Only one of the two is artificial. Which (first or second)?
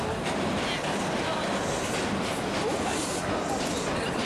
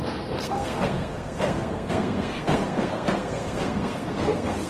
second